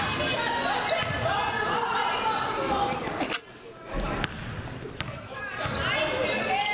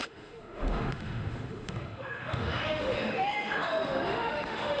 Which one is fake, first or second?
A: second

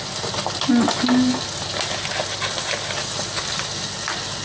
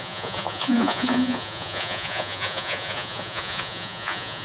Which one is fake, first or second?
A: second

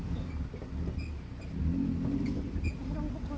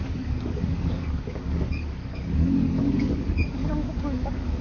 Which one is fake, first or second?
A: second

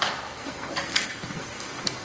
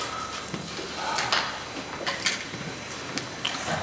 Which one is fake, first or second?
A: first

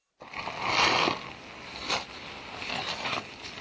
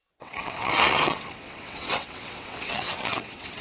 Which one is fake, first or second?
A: second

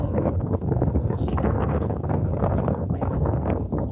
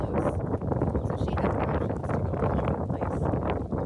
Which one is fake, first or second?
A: first